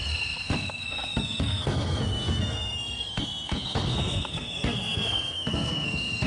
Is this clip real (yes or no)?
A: no